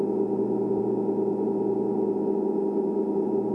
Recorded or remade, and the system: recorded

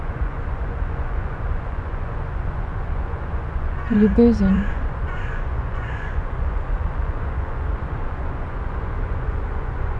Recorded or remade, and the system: remade, vocoder, Vocos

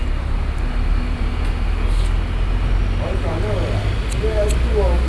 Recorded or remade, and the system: recorded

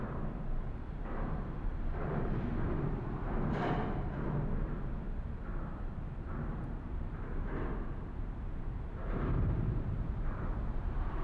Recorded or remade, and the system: remade, vocoder, BigVGAN v2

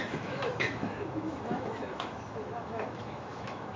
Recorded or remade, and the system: remade, autoencoder, DAC-VAE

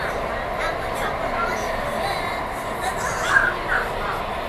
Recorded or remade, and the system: recorded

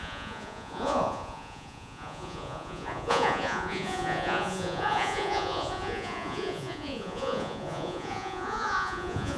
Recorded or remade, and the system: remade, vocoder, Vocos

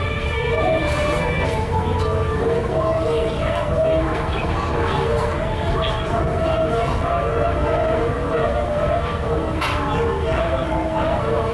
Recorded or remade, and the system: remade, codec, SNAC